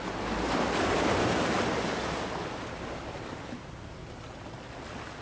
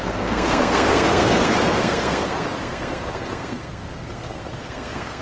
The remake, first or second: second